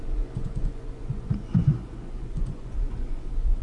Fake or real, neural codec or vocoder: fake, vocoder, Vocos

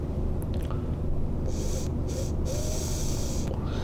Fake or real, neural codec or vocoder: real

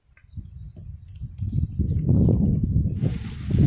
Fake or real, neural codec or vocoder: real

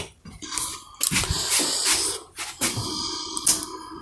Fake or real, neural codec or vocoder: real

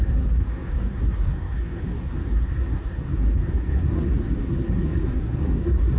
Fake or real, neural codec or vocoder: fake, codec, SNAC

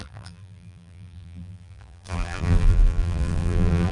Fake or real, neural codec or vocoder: fake, vocoder, BigVGAN v2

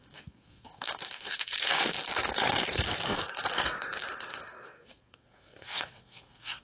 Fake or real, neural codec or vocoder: fake, codec, SNAC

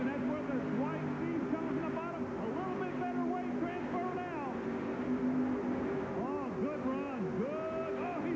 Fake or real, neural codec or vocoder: real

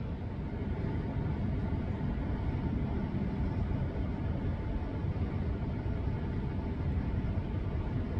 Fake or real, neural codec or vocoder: real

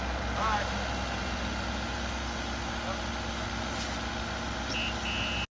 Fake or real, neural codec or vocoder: real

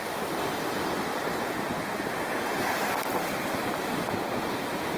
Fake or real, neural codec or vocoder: real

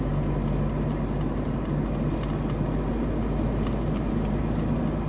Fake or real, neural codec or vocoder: real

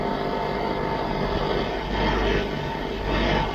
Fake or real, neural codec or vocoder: real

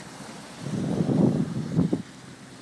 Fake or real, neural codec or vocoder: real